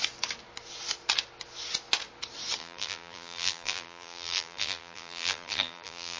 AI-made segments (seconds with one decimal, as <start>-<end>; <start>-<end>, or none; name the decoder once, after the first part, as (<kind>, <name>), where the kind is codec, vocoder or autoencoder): 2.6-6.2 (vocoder, BigVGAN v2)